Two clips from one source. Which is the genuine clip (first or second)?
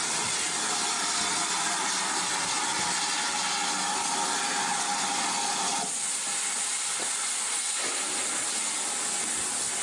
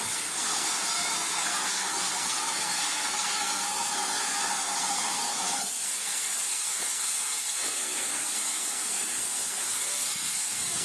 first